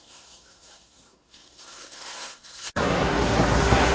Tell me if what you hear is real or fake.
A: fake